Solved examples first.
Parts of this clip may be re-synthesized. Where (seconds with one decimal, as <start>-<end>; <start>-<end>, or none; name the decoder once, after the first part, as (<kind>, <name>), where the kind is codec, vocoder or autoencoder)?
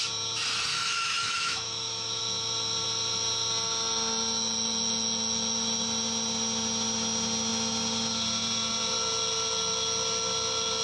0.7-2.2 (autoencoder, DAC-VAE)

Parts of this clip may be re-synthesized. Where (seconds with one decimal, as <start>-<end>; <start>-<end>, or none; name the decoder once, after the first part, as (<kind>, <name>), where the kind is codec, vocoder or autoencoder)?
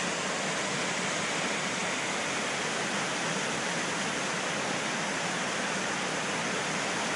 none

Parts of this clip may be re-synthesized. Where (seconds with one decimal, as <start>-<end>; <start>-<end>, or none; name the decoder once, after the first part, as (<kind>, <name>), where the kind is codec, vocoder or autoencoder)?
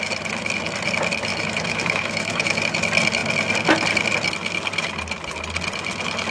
1.3-2.6 (autoencoder, DAC-VAE)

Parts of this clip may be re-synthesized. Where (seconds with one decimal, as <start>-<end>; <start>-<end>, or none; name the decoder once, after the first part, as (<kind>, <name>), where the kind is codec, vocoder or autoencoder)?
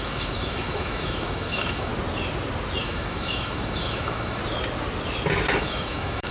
0.0-1.9 (autoencoder, DAC-VAE); 2.8-4.4; 5.6-6.3